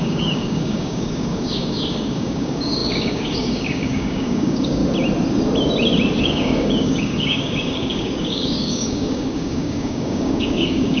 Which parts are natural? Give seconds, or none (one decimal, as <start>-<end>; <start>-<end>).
4.8-6.2